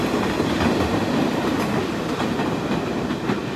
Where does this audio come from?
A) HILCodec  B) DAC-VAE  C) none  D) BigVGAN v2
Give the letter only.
C